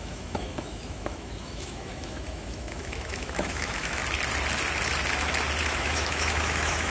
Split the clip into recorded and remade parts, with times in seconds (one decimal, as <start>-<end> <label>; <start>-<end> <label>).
0.0-4.0 remade; 4.0-5.6 recorded; 5.6-6.9 remade